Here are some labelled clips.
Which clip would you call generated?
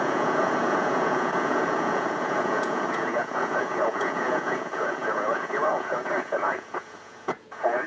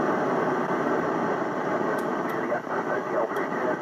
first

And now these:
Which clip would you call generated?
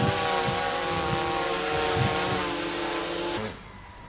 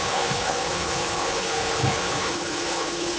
second